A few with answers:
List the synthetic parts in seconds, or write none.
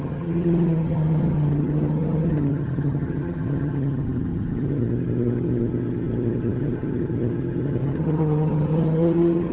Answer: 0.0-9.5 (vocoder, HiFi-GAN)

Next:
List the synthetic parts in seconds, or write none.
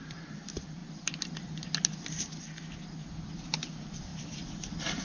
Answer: 0.0-0.8 (vocoder, BigVGAN v2); 3.3-5.0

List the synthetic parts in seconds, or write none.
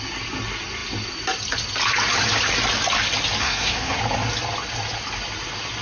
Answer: 3.4-4.0 (codec, SNAC)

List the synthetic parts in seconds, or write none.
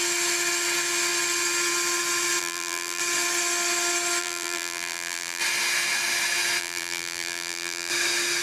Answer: 2.4-3.0 (vocoder, BigVGAN v2); 4.2-5.4; 6.6-7.9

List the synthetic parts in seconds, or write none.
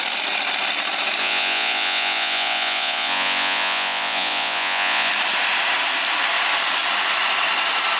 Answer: 1.2-5.1 (vocoder, Vocos)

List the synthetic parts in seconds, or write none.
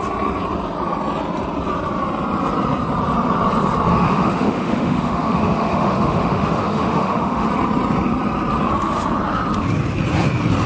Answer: 3.9-7.5 (autoencoder, DAC-VAE)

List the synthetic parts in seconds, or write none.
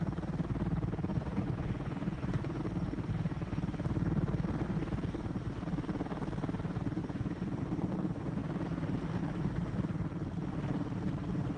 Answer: 1.1-2.6 (vocoder, Vocos); 7.0-7.6